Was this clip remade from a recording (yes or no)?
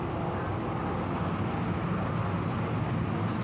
no